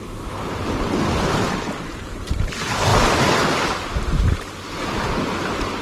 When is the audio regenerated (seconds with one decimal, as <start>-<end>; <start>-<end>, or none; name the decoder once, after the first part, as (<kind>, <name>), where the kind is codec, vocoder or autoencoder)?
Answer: none